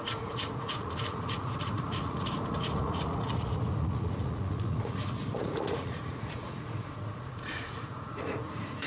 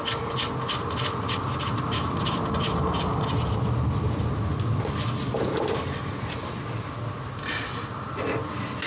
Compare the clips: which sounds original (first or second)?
second